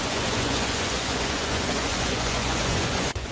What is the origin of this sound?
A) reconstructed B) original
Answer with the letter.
A